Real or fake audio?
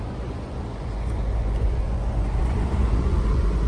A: fake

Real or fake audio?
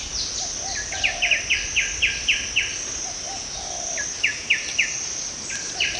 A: real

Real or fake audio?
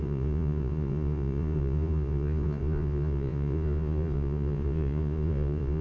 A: fake